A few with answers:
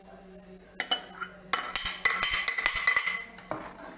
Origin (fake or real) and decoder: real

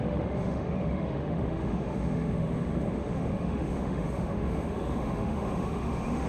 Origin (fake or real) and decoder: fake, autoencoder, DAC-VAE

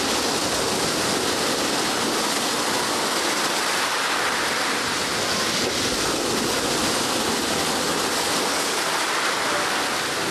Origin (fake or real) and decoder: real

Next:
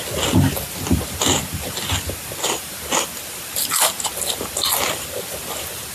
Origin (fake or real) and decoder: real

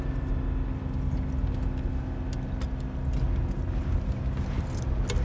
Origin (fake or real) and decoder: real